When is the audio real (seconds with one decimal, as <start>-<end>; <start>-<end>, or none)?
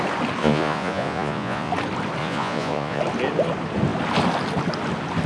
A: 0.0-0.4; 1.7-2.2; 3.0-5.3